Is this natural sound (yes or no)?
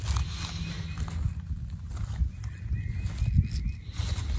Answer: yes